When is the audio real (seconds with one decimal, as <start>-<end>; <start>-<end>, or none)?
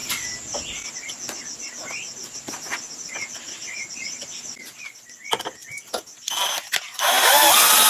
0.0-7.9